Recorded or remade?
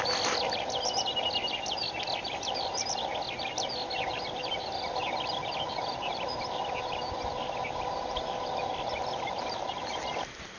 recorded